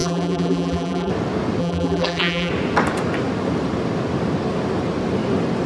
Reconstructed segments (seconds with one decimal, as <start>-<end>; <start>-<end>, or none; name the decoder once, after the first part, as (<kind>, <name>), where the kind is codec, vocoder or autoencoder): 0.0-1.1 (vocoder, BigVGAN v2); 1.6-2.5

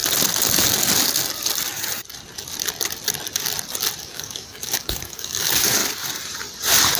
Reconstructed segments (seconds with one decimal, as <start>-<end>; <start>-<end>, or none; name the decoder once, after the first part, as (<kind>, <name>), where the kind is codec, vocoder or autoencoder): 4.0-5.8 (codec, DAC)

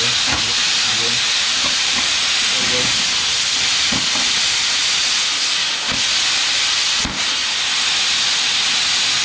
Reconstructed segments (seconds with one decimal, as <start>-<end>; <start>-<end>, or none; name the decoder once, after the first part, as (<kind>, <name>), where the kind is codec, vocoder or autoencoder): 0.6-2.2 (vocoder, BigVGAN v2)

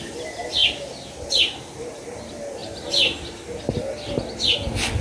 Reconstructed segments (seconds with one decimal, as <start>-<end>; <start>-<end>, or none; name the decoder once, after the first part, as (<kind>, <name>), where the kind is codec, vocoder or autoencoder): 2.6-3.6 (vocoder, BigVGAN v2)

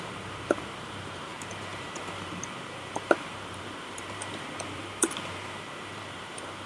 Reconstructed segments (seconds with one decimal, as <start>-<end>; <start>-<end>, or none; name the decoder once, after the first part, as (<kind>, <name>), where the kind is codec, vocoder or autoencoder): 0.0-6.7 (vocoder, BigVGAN v2)

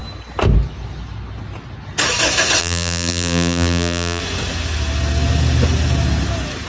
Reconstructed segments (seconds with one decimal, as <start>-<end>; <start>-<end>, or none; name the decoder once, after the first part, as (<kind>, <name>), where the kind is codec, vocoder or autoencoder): 2.6-4.2 (vocoder, BigVGAN v2)

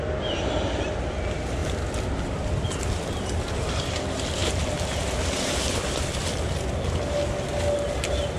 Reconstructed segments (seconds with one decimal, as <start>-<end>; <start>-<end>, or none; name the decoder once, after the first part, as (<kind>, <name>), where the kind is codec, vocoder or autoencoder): 4.4-5.0 (vocoder, BigVGAN v2)

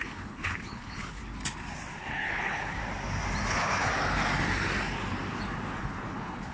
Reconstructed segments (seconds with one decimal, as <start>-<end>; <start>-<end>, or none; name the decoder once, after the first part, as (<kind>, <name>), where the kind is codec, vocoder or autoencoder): 0.0-1.2 (codec, HILCodec); 2.0-2.8; 3.5-3.9; 5.8-6.5